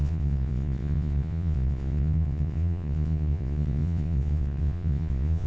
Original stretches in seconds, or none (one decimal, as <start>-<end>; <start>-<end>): none